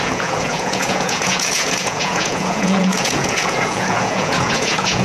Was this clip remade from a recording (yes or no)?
yes